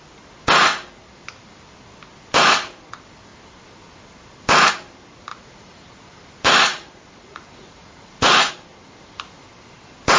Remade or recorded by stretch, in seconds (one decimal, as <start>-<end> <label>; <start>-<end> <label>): 0.0-5.3 recorded; 5.3-8.5 remade; 8.5-10.2 recorded